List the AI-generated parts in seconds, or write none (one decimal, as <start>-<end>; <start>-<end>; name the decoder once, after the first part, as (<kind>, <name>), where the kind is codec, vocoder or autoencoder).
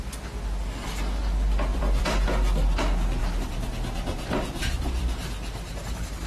1.7-2.2 (vocoder, BigVGAN v2); 3.2-5.1